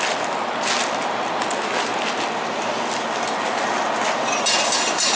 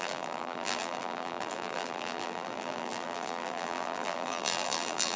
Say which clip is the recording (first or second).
first